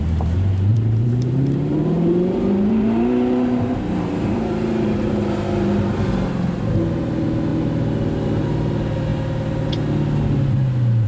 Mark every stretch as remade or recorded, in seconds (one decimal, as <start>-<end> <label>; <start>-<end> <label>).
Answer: 0.0-0.7 recorded; 0.7-5.1 remade; 5.1-11.1 recorded